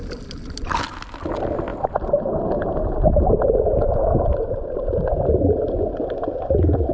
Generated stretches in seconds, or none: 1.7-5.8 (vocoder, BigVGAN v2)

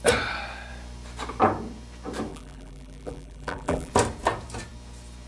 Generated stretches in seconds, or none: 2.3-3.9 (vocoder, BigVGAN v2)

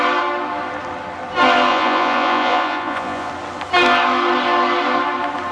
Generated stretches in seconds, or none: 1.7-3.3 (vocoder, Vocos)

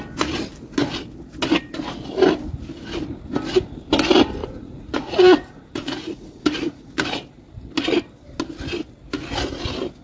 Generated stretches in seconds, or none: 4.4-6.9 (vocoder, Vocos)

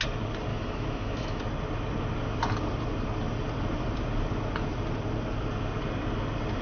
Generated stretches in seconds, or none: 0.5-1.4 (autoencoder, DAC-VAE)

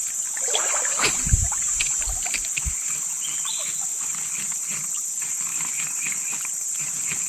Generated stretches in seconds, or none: 0.0-5.5 (vocoder, BigVGAN v2); 6.8-7.3